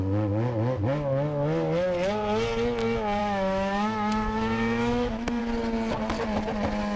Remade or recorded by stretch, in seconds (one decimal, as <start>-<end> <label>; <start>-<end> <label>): 0.0-3.2 recorded; 3.2-5.4 remade; 5.4-7.0 recorded